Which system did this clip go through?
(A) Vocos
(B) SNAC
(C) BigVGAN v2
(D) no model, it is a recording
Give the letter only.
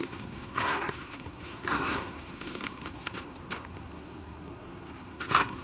B